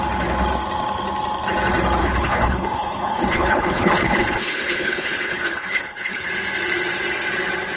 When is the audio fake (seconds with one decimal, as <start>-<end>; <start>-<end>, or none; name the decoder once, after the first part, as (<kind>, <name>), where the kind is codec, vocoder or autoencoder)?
2.0-6.3 (codec, HILCodec)